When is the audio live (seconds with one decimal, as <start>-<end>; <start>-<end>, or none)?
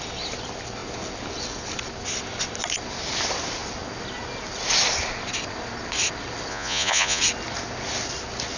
0.0-6.5; 7.2-8.6